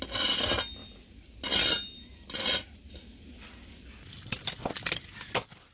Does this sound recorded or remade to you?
recorded